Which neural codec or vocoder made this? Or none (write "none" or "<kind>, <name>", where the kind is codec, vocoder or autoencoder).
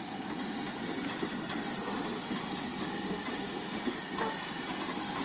vocoder, BigVGAN v2